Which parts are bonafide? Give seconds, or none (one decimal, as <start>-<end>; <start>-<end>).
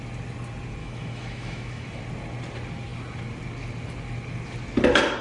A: 0.0-0.8; 2.0-5.2